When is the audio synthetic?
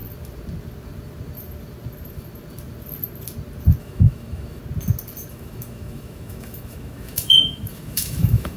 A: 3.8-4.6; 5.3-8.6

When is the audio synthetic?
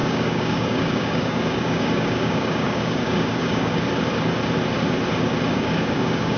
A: 0.0-3.8; 5.5-6.4